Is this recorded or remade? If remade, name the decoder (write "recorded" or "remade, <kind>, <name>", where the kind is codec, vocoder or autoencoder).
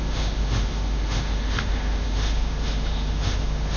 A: remade, autoencoder, DAC-VAE